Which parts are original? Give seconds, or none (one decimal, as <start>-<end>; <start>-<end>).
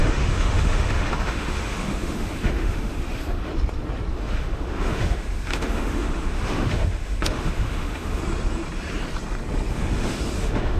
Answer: 3.5-4.1; 8.2-9.7